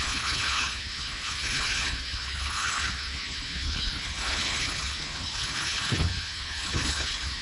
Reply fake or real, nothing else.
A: fake